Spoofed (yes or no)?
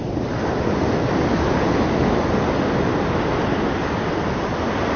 no